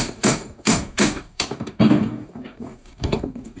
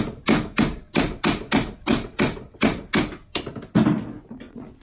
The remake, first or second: first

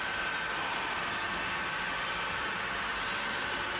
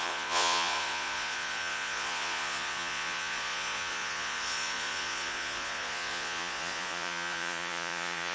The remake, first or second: second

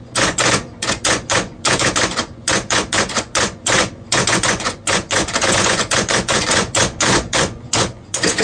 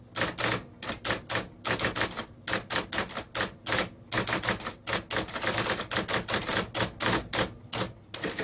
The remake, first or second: first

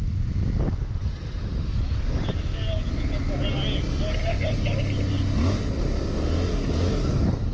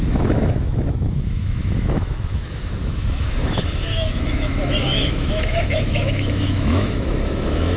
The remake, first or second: second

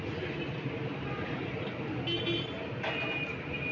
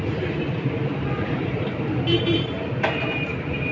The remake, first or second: second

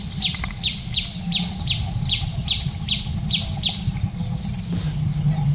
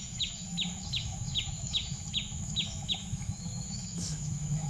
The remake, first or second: second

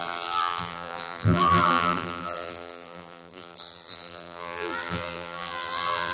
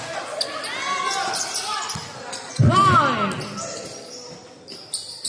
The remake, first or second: first